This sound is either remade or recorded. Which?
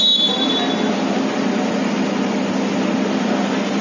recorded